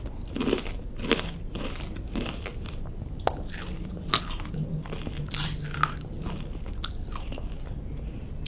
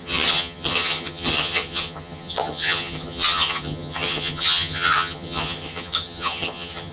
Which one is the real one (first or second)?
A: first